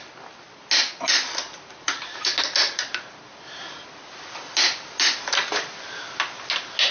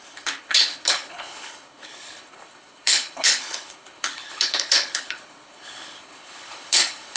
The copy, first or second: second